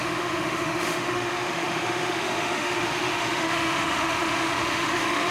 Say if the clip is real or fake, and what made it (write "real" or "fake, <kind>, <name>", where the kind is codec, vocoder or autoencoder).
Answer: fake, autoencoder, DAC-VAE